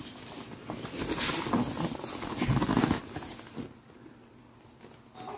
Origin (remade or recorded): recorded